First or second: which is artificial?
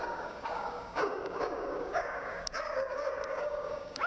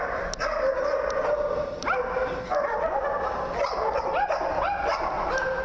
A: first